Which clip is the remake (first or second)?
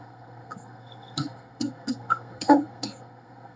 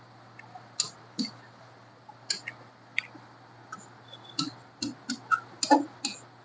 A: first